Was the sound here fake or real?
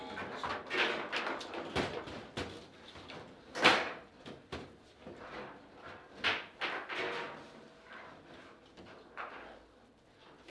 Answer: real